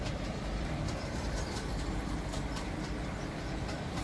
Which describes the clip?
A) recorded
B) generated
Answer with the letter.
B